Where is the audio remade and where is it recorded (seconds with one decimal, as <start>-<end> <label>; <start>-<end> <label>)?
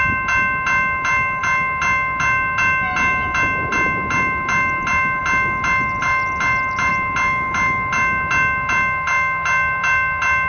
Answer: 0.0-10.5 recorded